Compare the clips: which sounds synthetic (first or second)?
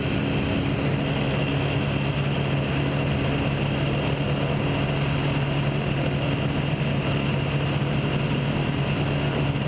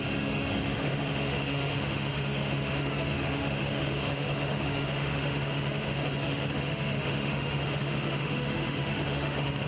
second